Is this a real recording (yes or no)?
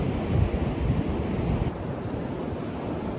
yes